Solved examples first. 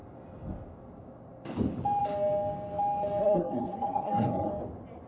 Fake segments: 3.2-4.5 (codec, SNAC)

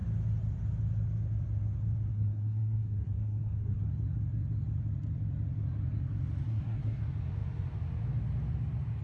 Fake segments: 2.1-3.8 (codec, SNAC); 6.5-7.0

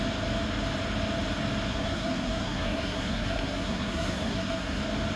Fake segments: 1.7-4.8 (codec, SNAC)

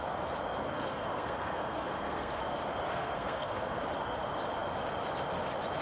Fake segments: 0.7-2.4 (codec, SNAC); 2.9-3.8

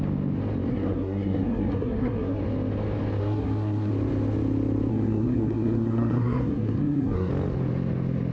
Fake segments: 0.7-2.4 (codec, SNAC); 3.2-3.9; 4.9-7.3

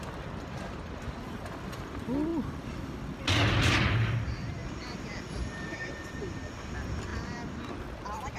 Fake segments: none

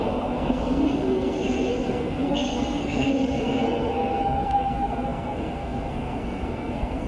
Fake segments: 0.0-7.1 (codec, SNAC)

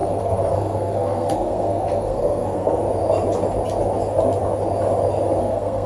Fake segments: 0.0-2.8 (codec, SNAC); 5.4-5.9